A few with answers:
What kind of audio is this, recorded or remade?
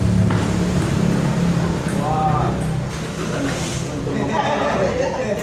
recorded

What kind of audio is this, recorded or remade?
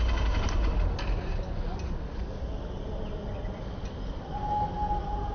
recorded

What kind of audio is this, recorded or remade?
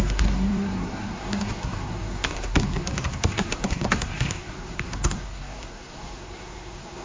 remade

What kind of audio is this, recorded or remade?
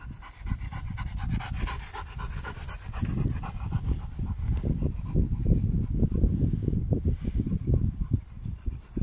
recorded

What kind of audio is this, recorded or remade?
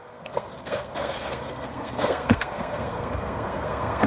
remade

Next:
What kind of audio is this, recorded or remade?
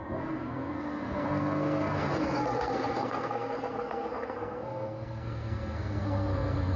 remade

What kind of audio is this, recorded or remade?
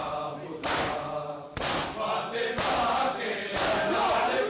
recorded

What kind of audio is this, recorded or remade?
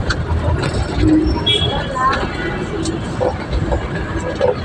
recorded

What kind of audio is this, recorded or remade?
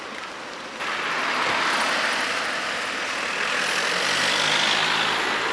recorded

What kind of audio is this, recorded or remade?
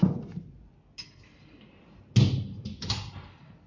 recorded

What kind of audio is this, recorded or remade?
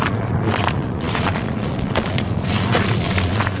remade